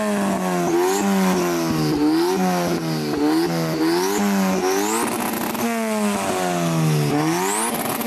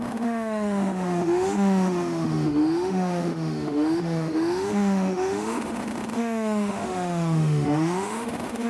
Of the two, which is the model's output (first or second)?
second